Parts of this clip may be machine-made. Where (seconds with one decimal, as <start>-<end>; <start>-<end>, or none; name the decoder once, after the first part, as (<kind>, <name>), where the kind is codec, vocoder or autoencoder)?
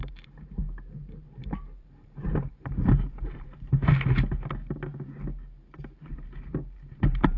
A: 0.0-3.9 (vocoder, BigVGAN v2); 5.8-7.4